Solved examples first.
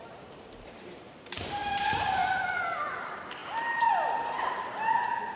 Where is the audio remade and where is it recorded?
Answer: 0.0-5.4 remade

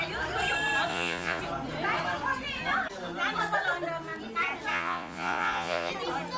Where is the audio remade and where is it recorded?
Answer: 0.0-0.9 recorded; 0.9-1.4 remade; 1.4-4.7 recorded; 4.7-5.9 remade; 5.9-6.4 recorded

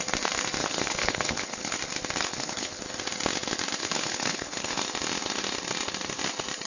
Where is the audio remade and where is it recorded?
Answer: 0.0-0.6 recorded; 0.6-1.8 remade; 1.8-2.3 recorded; 2.3-2.8 remade; 2.8-3.8 recorded; 3.8-4.8 remade; 4.8-6.7 recorded